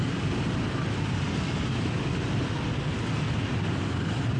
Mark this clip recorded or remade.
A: recorded